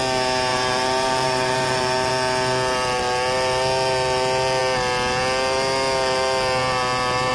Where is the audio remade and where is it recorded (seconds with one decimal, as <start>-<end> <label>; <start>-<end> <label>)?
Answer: 0.0-0.5 recorded; 0.5-2.1 remade; 2.1-7.3 recorded